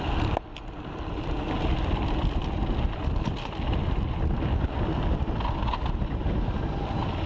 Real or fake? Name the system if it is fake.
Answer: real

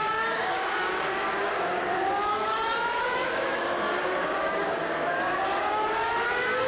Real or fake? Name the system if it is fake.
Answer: fake, codec, DAC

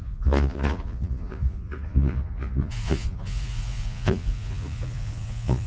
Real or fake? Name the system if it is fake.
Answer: fake, vocoder, Vocos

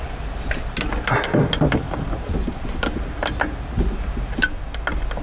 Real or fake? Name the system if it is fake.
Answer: real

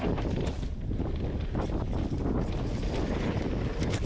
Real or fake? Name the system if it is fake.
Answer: real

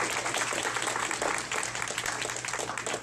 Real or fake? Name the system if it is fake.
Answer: real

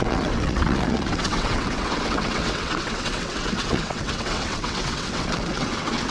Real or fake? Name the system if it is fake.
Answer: fake, vocoder, WaveNeXt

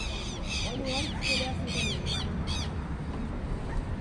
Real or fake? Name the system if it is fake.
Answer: real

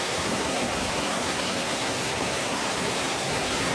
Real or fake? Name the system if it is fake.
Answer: fake, codec, SNAC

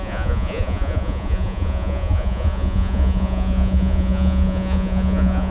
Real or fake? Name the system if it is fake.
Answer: fake, vocoder, Vocos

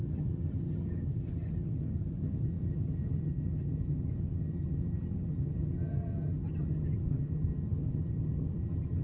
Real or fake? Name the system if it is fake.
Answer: fake, vocoder, HiFi-GAN